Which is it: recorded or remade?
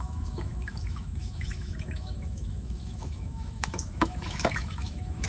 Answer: remade